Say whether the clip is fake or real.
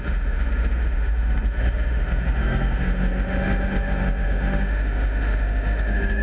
fake